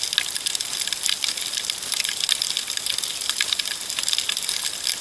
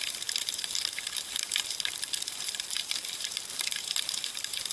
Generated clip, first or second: second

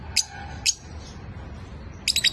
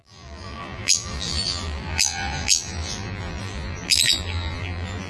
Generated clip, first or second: second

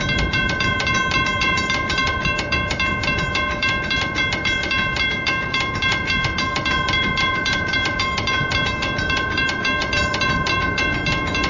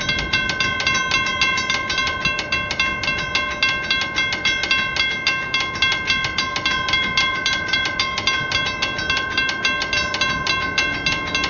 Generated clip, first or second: first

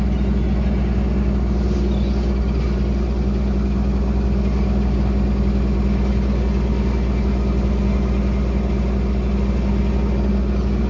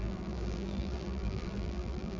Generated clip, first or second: second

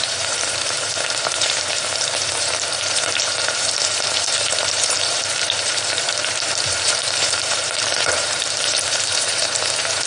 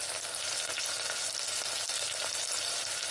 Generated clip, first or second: first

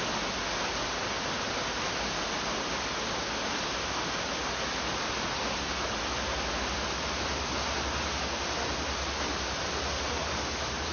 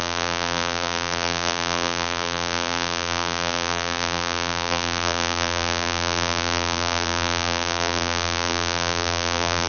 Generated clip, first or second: second